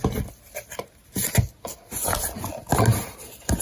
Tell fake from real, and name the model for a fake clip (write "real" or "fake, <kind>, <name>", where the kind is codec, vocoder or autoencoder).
real